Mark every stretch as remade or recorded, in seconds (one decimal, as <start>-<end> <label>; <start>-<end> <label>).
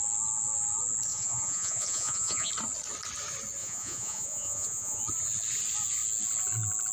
0.0-1.1 recorded; 1.1-2.5 remade; 2.5-3.6 recorded; 3.6-5.0 remade; 5.0-6.9 recorded